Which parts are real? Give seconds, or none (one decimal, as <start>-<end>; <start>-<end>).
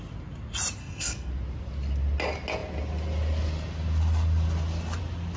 0.0-0.8; 1.3-5.4